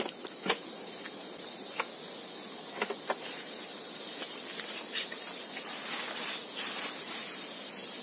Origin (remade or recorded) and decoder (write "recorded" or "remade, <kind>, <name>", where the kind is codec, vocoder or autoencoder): recorded